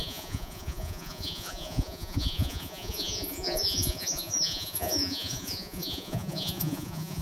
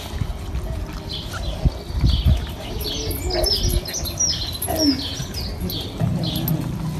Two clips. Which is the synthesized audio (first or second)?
first